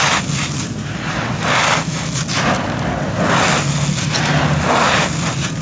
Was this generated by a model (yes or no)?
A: no